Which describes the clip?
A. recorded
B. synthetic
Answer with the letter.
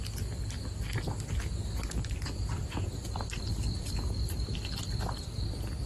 A